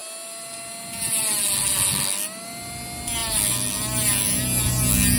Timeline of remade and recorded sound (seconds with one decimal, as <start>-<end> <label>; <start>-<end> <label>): 0.0-5.2 recorded